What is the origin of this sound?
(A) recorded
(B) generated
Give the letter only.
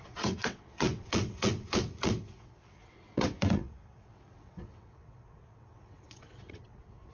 B